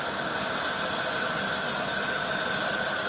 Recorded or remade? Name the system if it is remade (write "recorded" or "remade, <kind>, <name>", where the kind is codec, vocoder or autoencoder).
recorded